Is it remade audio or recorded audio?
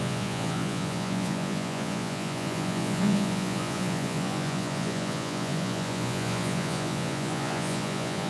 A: remade